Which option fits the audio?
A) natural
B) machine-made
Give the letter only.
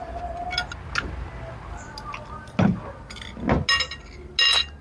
A